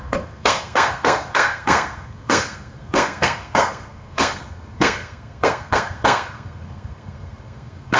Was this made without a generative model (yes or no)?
no